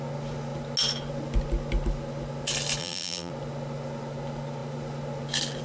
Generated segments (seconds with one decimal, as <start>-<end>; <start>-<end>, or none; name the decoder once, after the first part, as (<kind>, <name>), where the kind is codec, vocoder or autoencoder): 2.8-3.3 (vocoder, BigVGAN v2)